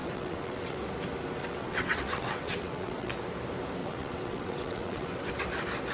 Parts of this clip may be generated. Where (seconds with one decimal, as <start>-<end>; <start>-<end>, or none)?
0.0-0.8; 1.4-3.1; 3.8-5.3